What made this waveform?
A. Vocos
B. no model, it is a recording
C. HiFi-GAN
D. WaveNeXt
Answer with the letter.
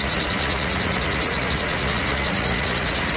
A